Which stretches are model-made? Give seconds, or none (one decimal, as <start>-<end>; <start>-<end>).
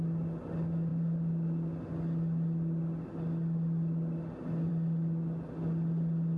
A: none